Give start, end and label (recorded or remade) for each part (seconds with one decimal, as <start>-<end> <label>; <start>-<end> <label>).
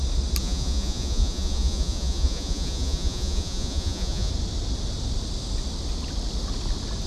0.0-0.4 recorded; 0.4-4.3 remade; 4.3-7.1 recorded